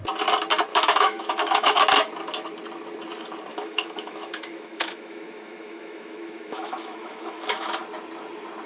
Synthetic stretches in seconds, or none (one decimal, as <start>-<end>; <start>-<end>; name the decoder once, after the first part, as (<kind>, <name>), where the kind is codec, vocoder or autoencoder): 0.7-1.7 (autoencoder, DAC-VAE); 3.5-7.8